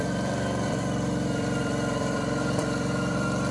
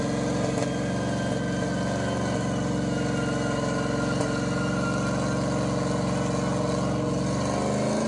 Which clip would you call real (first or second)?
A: second